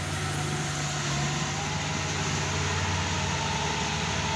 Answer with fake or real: real